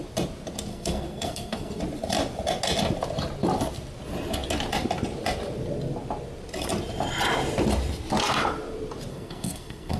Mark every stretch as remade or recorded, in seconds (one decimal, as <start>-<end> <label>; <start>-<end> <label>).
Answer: 0.0-0.7 recorded; 0.7-1.8 remade; 1.8-9.1 recorded; 9.1-10.0 remade